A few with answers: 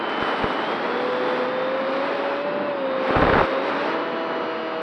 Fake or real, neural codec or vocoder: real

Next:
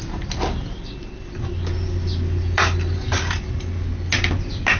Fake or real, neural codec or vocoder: real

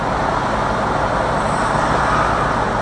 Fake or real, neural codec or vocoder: real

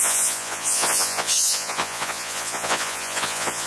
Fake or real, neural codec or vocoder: fake, vocoder, Vocos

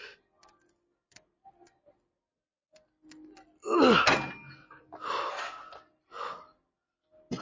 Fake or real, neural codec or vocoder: real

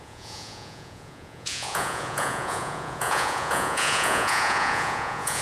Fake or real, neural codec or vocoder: fake, vocoder, Vocos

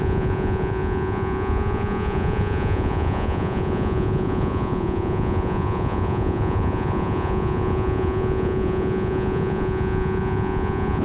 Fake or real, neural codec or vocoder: fake, vocoder, Vocos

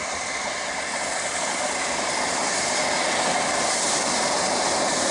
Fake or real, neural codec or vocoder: real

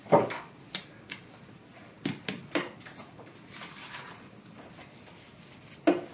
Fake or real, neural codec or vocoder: real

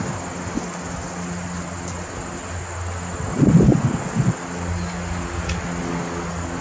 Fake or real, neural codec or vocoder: real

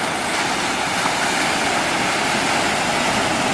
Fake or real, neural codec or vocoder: real